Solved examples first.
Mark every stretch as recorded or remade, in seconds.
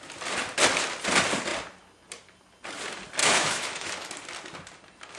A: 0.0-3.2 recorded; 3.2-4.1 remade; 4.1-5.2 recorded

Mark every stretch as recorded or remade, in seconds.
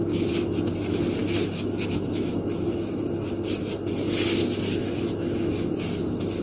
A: 0.0-1.2 recorded; 1.2-2.9 remade; 2.9-4.8 recorded; 4.8-5.7 remade; 5.7-6.4 recorded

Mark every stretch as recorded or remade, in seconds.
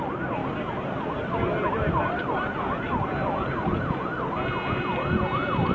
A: 0.0-5.7 recorded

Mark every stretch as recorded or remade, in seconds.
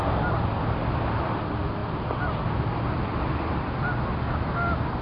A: 0.0-5.0 recorded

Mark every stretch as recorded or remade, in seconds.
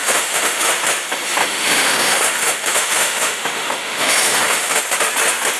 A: 0.0-0.7 remade; 0.7-1.4 recorded; 1.4-4.8 remade; 4.8-5.6 recorded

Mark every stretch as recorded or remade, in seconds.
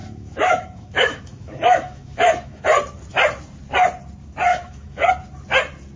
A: 0.0-2.6 remade; 2.6-4.5 recorded; 4.5-5.1 remade; 5.1-6.0 recorded